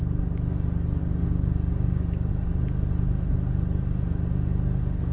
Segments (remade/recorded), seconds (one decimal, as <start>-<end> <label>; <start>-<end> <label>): 0.0-1.0 recorded; 1.0-2.3 remade; 2.3-5.1 recorded